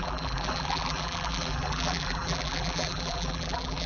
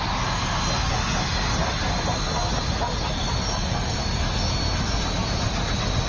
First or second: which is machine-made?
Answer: first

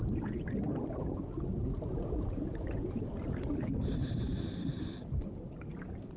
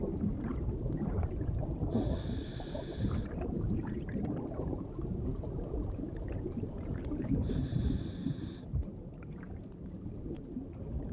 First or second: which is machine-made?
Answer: second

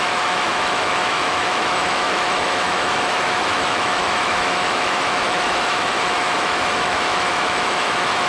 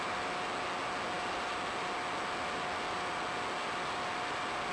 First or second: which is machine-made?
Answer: first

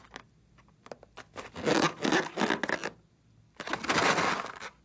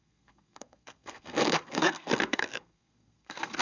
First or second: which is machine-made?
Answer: second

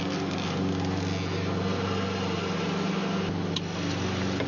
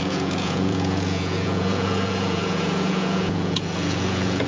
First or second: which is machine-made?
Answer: second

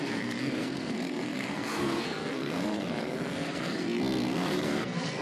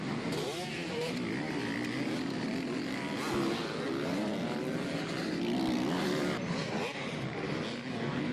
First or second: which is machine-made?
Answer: first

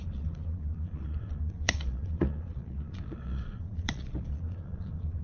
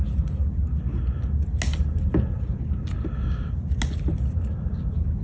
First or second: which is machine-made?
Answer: first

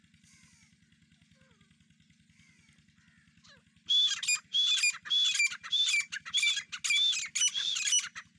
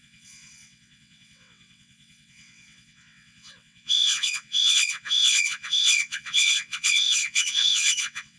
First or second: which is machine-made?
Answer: second